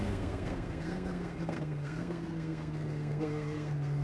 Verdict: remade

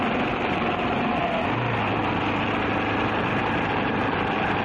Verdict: recorded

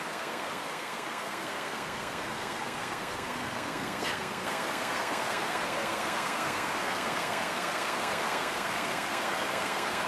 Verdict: remade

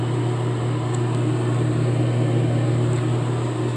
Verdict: recorded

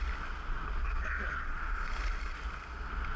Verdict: recorded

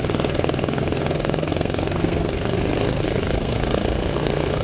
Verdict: remade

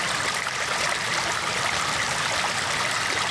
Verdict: recorded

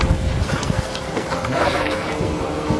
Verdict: remade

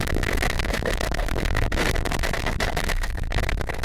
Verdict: remade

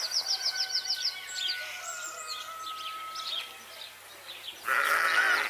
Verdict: recorded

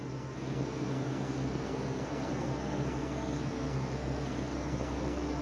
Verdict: remade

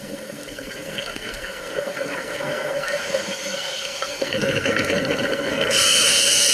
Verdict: remade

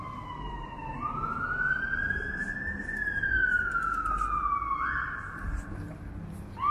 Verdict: recorded